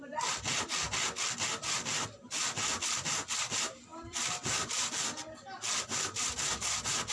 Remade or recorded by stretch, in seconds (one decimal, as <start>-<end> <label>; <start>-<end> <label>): 0.0-3.9 recorded; 3.9-5.8 remade; 5.8-7.1 recorded